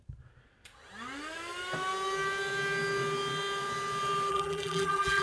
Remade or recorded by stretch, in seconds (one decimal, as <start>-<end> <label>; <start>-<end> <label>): 0.0-4.3 recorded; 4.3-5.2 remade